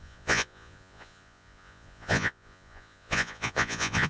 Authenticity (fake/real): fake